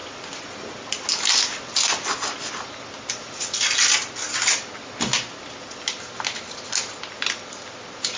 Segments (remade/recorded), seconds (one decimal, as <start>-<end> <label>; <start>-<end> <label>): 0.0-8.2 recorded